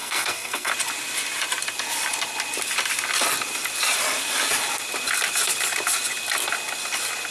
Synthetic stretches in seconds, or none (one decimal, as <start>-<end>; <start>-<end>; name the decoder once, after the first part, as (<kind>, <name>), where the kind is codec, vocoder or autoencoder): 0.0-0.7 (codec, SNAC)